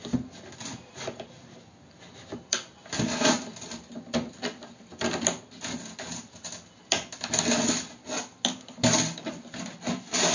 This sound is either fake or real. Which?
real